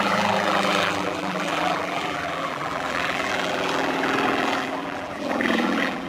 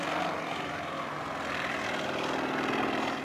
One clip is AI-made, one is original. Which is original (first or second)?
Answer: second